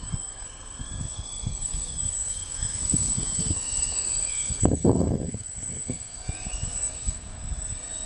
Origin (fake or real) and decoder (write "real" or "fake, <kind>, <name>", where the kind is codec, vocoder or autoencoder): fake, codec, SNAC